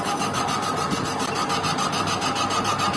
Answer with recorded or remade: recorded